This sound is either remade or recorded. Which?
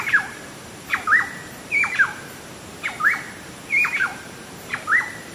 remade